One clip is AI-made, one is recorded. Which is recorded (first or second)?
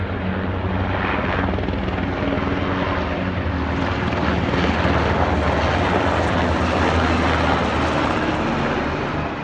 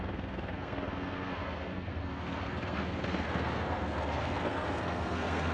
first